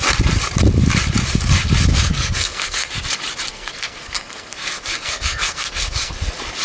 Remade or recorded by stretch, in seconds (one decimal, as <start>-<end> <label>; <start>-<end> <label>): 0.0-1.9 recorded; 1.9-2.9 remade; 2.9-3.5 recorded; 3.5-6.1 remade; 6.1-6.6 recorded